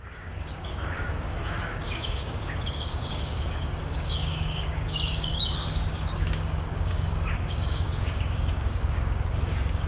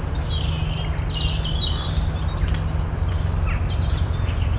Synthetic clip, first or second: first